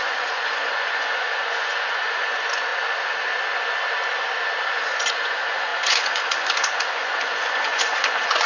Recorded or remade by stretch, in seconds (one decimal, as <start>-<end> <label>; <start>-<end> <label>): 0.0-2.7 remade; 2.7-4.8 recorded; 4.8-8.5 remade